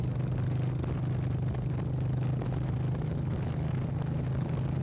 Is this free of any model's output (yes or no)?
yes